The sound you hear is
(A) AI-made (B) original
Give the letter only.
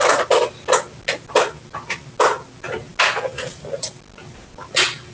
B